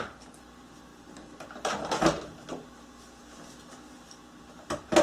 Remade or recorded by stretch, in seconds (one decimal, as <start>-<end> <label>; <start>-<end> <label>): 0.0-5.0 recorded